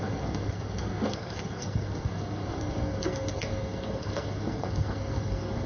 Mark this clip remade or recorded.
remade